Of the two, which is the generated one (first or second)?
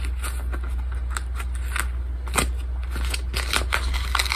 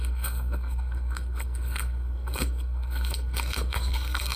second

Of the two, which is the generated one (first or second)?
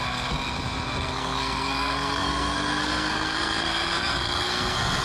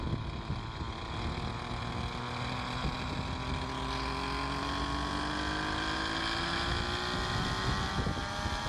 first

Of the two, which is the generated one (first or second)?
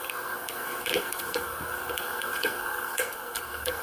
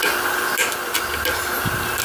first